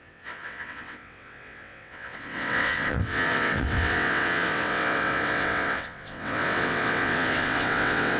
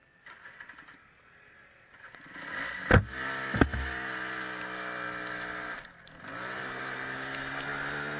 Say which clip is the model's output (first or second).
first